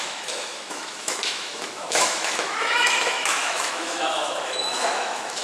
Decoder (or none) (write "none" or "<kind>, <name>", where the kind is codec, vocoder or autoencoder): autoencoder, DAC-VAE